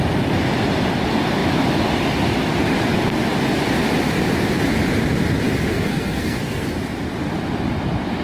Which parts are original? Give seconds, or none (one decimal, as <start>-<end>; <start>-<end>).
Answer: 0.0-5.7; 6.7-8.2

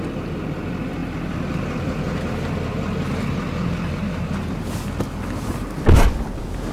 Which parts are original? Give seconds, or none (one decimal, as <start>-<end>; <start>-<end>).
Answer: 0.0-6.7

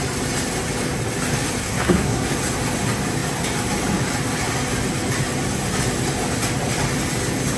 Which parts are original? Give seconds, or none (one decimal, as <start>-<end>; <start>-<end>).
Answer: 0.0-1.6; 2.3-7.6